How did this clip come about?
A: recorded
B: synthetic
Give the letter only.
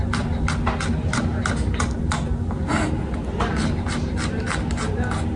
A